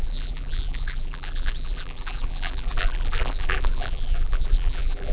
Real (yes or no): no